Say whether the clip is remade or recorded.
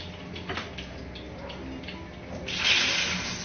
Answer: recorded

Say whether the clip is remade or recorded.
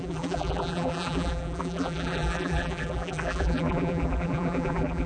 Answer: remade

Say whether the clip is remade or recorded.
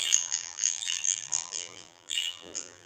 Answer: remade